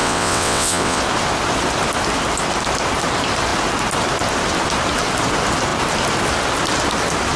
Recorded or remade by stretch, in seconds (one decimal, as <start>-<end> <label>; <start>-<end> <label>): 0.0-1.0 remade; 1.0-7.4 recorded

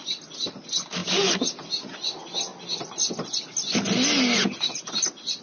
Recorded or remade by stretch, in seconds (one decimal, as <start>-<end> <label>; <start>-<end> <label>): 0.0-5.4 recorded

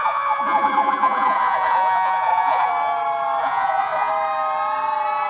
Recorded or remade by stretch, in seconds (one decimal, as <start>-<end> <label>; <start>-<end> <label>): 0.0-2.7 remade; 2.7-3.4 recorded; 3.4-4.1 remade; 4.1-5.3 recorded

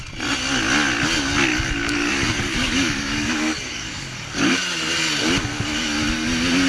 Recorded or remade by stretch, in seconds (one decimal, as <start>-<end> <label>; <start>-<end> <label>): 0.0-1.5 recorded; 1.5-4.5 remade; 4.5-6.7 recorded

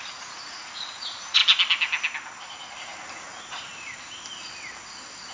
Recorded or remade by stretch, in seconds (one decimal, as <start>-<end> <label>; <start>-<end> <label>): 0.0-1.4 remade; 1.4-3.1 recorded; 3.1-3.7 remade; 3.7-5.3 recorded

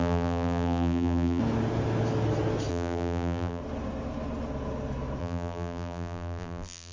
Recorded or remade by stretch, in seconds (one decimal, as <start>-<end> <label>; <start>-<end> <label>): 0.0-1.4 remade; 1.4-2.7 recorded; 2.7-3.6 remade; 3.6-5.2 recorded; 5.2-6.9 remade

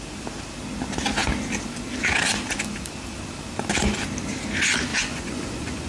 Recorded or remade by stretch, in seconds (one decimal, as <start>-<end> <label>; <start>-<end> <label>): 0.0-4.9 recorded; 4.9-5.9 remade

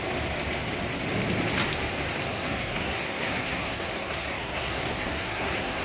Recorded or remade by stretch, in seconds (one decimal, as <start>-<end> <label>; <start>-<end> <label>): 0.0-2.3 recorded; 2.3-5.8 remade